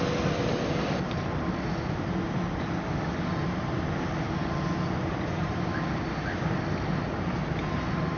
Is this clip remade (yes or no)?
no